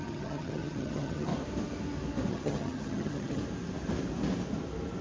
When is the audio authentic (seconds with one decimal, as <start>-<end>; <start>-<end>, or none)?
1.3-2.3; 3.4-5.0